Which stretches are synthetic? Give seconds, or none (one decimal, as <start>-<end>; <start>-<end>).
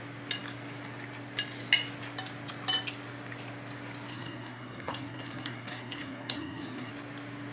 4.1-6.9